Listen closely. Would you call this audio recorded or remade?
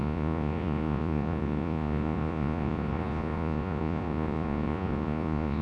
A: remade